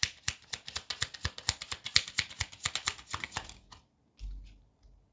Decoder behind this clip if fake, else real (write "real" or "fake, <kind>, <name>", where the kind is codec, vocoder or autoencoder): real